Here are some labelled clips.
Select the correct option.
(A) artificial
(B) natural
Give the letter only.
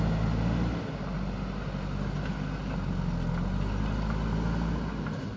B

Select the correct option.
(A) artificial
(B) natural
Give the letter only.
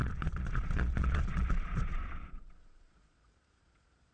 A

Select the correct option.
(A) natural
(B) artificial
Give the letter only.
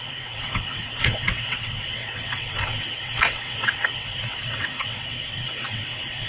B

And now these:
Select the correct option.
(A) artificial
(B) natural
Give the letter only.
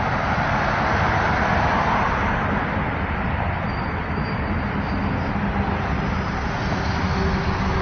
B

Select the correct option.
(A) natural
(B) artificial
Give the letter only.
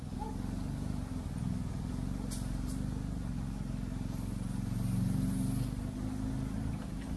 A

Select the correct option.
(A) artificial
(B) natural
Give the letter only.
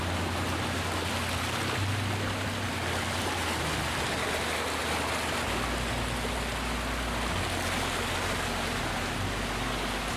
B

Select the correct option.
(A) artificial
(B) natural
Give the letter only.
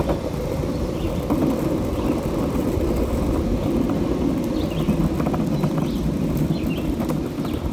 B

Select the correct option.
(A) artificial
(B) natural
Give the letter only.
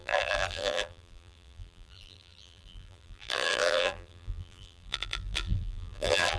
A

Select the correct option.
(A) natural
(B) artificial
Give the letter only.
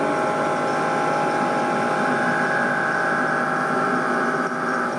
A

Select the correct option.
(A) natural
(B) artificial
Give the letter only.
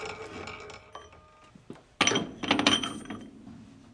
A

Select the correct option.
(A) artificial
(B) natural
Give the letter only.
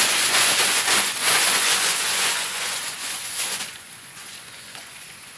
A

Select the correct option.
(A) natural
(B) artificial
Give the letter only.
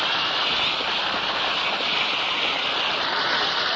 A